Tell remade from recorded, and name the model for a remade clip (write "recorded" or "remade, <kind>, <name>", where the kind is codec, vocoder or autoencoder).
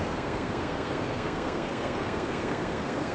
remade, codec, SNAC